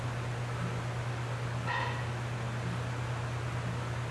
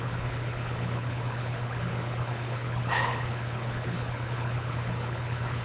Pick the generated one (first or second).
second